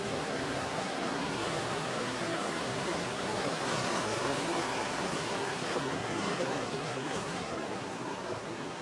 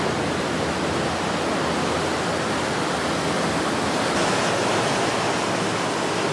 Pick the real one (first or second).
second